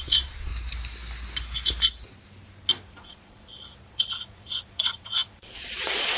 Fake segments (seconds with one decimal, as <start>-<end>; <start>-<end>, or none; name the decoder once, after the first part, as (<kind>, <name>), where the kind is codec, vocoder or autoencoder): 0.0-0.5 (vocoder, Vocos); 3.0-6.2

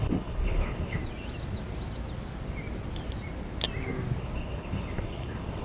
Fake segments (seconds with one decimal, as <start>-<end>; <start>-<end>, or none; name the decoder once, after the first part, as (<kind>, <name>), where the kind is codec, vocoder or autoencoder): 0.0-1.0 (codec, HILCodec); 4.2-5.6